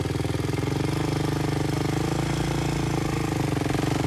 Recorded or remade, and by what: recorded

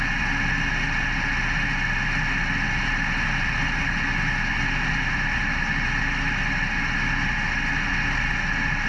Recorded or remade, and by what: recorded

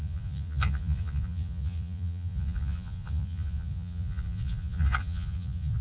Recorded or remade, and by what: remade, vocoder, Vocos